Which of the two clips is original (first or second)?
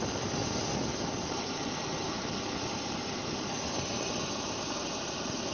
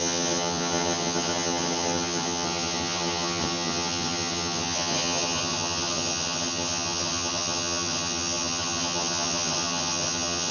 first